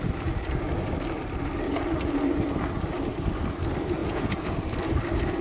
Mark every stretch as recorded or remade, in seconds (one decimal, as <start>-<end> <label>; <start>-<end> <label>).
0.0-4.0 recorded; 4.0-4.5 remade; 4.5-5.4 recorded